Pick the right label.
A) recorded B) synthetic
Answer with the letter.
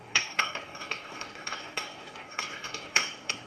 B